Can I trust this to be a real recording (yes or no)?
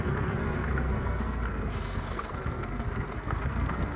no